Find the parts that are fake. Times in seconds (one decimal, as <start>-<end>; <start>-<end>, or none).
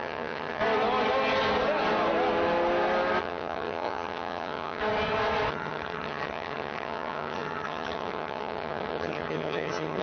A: 0.0-0.6; 3.2-4.8; 5.5-10.0